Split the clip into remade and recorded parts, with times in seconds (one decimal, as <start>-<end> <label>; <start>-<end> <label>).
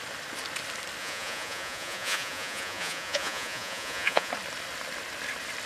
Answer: 0.0-1.0 recorded; 1.0-4.3 remade; 4.3-5.7 recorded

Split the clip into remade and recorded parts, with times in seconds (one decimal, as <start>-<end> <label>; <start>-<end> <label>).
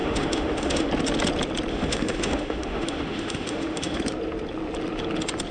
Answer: 0.0-0.9 remade; 0.9-1.7 recorded; 1.7-4.0 remade; 4.0-5.5 recorded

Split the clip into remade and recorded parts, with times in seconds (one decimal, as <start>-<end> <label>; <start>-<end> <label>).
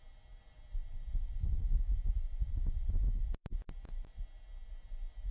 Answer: 0.0-1.7 recorded; 1.7-4.2 remade; 4.2-5.3 recorded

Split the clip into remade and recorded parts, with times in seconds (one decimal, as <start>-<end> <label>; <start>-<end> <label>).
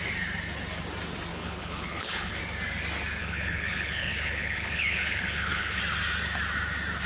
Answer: 0.0-1.3 recorded; 1.3-2.4 remade; 2.4-3.2 recorded; 3.2-5.8 remade; 5.8-7.1 recorded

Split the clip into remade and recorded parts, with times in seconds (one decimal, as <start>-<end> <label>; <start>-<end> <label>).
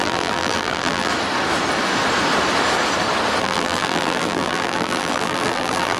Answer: 0.0-1.1 remade; 1.1-3.4 recorded; 3.4-6.0 remade